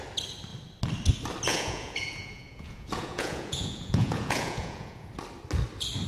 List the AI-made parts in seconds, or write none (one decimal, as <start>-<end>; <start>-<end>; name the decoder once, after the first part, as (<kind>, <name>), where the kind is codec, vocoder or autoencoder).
1.5-5.1 (vocoder, Vocos)